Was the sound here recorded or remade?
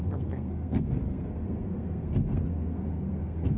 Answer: remade